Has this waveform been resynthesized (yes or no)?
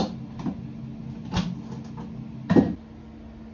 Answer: no